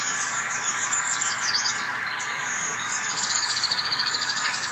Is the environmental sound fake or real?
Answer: fake